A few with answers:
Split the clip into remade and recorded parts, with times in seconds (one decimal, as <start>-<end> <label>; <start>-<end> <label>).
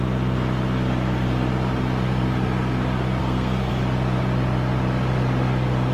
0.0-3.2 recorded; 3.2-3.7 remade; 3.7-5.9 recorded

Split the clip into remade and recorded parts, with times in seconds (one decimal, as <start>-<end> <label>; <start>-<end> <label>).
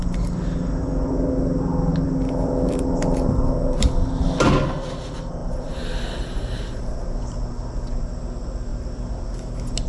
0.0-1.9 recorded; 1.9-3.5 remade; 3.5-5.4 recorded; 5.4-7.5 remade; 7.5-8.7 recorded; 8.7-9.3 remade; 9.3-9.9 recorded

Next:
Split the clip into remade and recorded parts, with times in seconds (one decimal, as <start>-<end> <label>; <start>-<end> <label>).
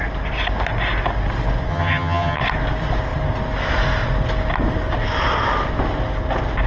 0.0-1.7 recorded; 1.7-2.4 remade; 2.4-6.7 recorded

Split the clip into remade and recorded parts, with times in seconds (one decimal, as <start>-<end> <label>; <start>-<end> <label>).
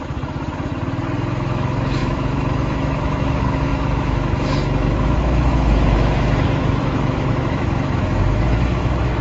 0.0-0.7 remade; 0.7-1.3 recorded; 1.3-9.2 remade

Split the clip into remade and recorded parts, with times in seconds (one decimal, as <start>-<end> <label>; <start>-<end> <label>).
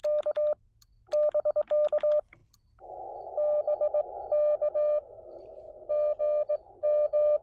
0.0-7.4 recorded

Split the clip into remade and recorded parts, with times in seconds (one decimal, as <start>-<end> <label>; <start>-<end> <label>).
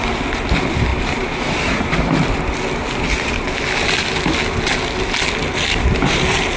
0.0-0.9 recorded; 0.9-1.9 remade; 1.9-6.6 recorded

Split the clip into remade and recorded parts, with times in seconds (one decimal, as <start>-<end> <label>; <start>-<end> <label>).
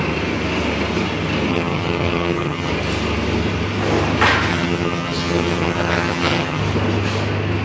0.0-1.5 recorded; 1.5-2.7 remade; 2.7-4.5 recorded; 4.5-6.6 remade; 6.6-7.6 recorded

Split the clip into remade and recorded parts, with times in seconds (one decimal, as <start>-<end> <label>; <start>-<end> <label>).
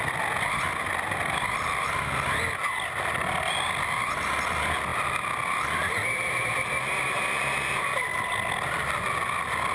0.0-9.7 recorded